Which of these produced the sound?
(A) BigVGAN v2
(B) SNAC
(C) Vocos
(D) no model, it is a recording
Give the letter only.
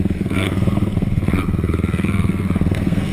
B